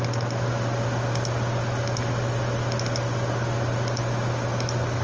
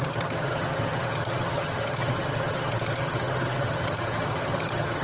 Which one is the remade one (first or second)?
second